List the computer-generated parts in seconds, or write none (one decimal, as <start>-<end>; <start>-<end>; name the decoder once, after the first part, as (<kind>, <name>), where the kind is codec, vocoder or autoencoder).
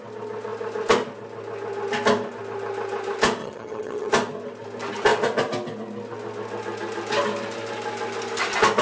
3.4-4.1 (vocoder, HiFi-GAN)